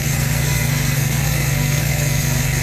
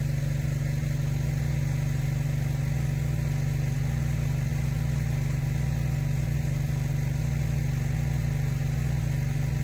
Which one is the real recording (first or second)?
second